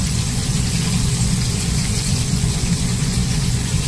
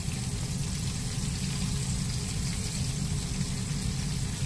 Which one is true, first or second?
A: second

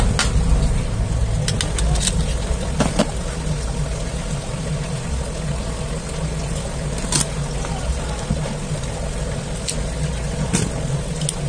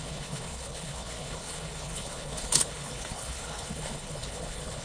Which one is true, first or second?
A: first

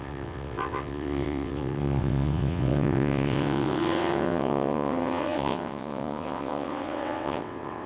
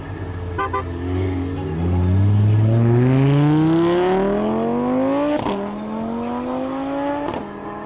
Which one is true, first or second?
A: second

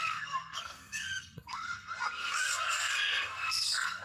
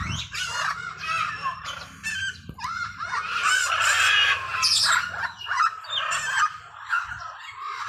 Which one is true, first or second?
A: second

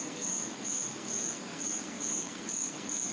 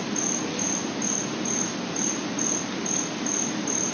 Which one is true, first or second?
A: second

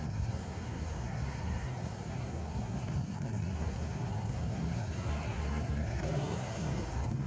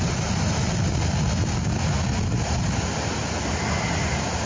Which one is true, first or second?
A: second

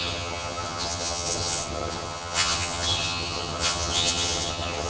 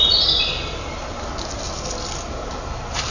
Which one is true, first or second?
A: second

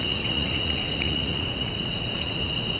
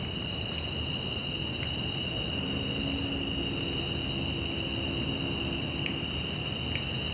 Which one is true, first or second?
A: second